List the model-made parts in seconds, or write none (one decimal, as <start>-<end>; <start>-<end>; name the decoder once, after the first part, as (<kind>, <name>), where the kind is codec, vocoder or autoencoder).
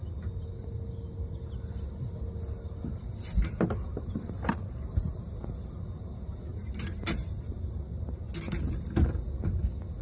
none